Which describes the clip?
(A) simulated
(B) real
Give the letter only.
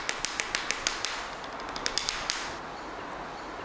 B